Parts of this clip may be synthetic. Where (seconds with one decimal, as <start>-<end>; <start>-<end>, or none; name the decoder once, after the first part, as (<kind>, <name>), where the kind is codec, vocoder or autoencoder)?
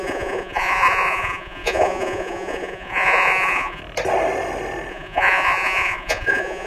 0.0-3.8 (vocoder, Vocos); 4.9-6.7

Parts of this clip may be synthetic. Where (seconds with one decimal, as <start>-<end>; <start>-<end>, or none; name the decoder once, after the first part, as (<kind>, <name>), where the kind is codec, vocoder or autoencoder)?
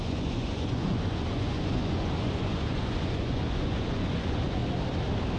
0.0-4.6 (vocoder, Vocos)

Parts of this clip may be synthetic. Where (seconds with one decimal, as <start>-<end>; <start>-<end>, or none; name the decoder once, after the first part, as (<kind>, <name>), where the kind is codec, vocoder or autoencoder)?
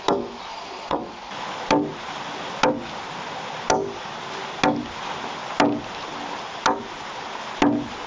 0.5-1.1 (vocoder, Vocos)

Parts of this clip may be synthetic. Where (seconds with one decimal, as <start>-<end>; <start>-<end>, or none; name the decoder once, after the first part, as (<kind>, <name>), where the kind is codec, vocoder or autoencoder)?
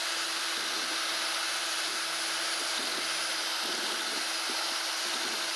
none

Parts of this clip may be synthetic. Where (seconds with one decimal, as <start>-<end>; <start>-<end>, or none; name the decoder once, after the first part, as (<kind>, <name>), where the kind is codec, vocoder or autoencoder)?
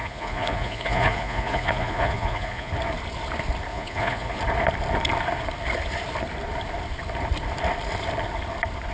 0.0-2.7 (vocoder, Vocos); 3.7-4.4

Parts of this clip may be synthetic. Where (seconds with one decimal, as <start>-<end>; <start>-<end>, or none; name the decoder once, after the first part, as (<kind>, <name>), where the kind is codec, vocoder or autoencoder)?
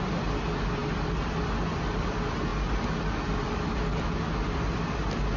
none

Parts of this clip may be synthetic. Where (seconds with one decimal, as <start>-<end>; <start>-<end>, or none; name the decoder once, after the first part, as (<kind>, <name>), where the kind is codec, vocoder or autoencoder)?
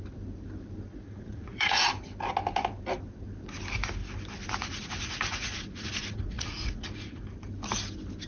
0.9-1.9 (vocoder, Vocos); 4.6-7.3